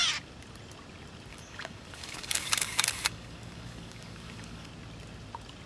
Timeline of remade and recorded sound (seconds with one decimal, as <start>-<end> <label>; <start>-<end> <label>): 0.0-1.3 recorded; 1.3-4.7 remade; 4.7-5.7 recorded